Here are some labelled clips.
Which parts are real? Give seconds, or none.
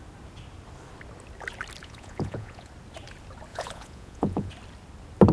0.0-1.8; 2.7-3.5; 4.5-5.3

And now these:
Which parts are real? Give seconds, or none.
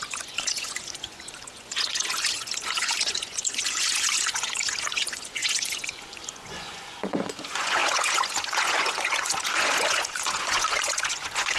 none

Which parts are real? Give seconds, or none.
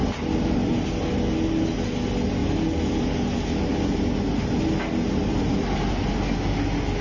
0.0-7.0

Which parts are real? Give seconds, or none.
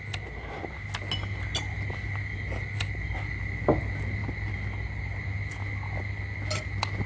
0.0-7.1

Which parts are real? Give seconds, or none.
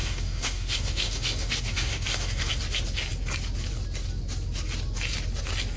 2.5-5.8